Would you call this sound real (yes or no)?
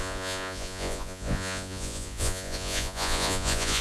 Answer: no